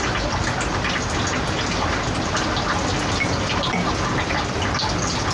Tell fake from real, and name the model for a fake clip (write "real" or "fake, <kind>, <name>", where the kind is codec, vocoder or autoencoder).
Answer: real